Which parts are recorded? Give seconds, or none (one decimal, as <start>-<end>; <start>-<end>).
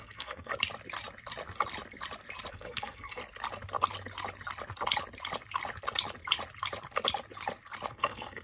0.5-2.5; 3.2-7.9